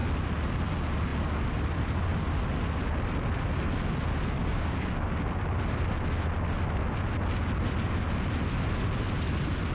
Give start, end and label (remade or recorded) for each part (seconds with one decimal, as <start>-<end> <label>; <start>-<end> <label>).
0.0-4.4 recorded; 4.4-5.1 remade; 5.1-9.7 recorded